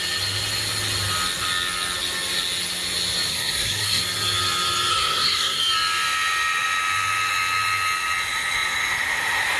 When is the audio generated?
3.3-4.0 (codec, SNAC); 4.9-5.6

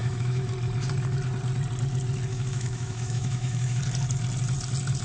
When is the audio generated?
0.0-0.5 (autoencoder, DAC-VAE); 2.3-3.8

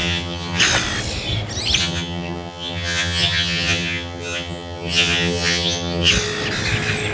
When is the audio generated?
0.0-0.6 (vocoder, HiFi-GAN); 1.8-6.1